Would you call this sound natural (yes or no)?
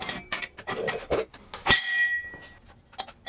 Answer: yes